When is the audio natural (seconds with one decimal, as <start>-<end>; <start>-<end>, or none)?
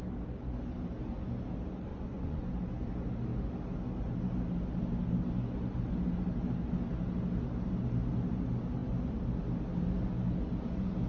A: 0.0-1.9; 2.5-11.1